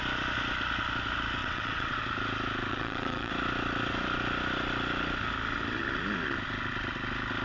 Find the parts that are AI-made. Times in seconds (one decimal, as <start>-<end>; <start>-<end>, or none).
1.4-2.0; 2.7-3.3